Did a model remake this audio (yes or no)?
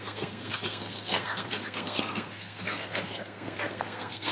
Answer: yes